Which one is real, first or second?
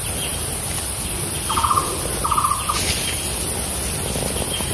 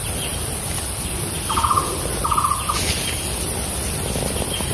first